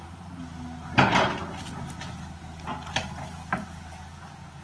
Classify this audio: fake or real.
real